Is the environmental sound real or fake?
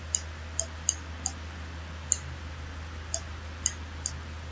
real